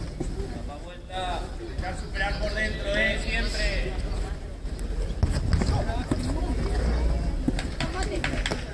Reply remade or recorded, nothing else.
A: recorded